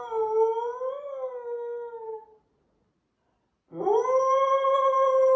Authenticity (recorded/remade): recorded